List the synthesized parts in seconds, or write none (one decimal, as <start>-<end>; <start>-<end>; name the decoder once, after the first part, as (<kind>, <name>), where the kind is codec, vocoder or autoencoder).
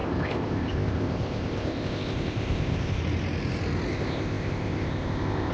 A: 0.0-3.0 (codec, ZipCodec); 3.9-5.5